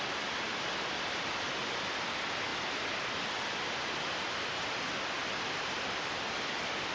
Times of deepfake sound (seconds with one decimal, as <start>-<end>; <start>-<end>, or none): none